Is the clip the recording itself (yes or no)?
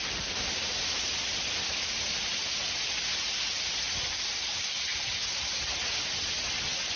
yes